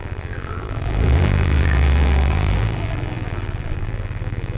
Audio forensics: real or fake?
fake